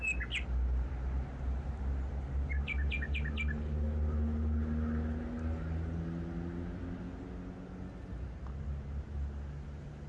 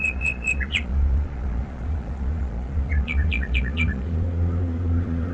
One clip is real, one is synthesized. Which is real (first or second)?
first